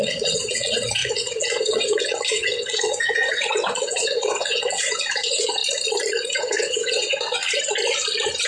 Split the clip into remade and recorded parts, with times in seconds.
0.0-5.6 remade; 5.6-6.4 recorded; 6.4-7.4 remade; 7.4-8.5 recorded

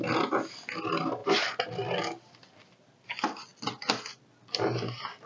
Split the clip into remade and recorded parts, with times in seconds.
0.0-5.3 recorded